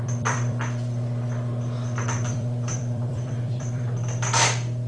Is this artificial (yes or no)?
yes